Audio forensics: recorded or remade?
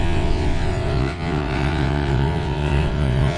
remade